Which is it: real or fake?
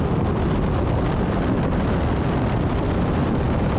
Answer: real